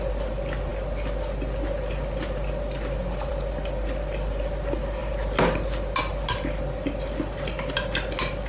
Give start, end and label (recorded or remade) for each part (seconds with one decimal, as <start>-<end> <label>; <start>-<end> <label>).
0.0-8.5 recorded